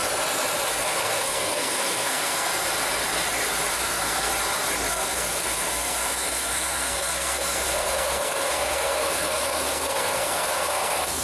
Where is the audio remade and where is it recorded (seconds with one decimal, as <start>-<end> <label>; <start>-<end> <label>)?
0.0-0.7 recorded; 0.7-2.5 remade; 2.5-3.7 recorded; 3.7-4.3 remade; 4.3-4.9 recorded; 4.9-11.2 remade